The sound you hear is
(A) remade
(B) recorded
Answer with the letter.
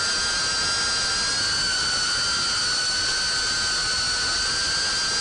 B